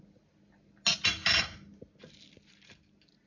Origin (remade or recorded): recorded